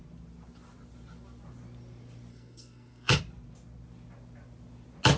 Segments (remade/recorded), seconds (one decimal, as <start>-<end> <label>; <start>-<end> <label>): 0.0-2.3 recorded; 2.3-3.2 remade; 3.2-5.2 recorded